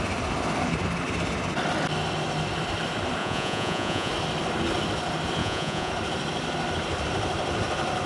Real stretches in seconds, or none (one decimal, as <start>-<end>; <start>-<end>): 0.0-3.2; 4.1-5.4; 5.9-8.1